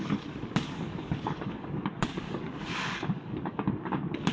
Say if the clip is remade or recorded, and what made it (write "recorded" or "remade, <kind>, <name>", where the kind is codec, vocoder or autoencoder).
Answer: remade, codec, DAC